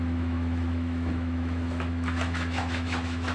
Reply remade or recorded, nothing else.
remade